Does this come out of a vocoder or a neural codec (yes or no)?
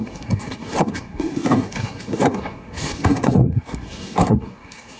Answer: yes